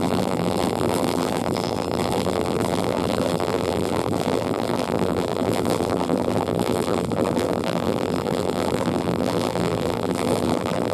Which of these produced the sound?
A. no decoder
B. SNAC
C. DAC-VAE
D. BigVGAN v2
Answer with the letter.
D